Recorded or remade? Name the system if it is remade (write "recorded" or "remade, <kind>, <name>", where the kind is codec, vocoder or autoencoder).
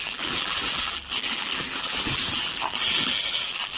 remade, vocoder, BigVGAN v2